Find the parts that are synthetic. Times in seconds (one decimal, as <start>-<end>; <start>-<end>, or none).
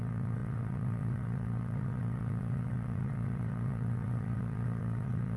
0.0-5.4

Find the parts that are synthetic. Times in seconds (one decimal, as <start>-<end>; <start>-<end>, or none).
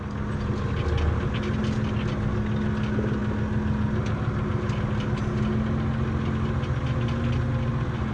none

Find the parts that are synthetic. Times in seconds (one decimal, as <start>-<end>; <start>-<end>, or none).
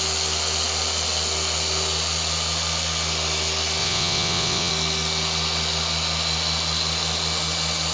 3.8-4.7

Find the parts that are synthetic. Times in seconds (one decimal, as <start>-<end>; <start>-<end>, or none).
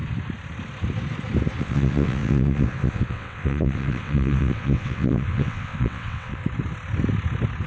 1.6-6.4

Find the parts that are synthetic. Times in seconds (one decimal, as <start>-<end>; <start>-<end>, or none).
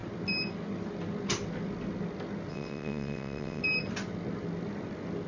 2.5-3.6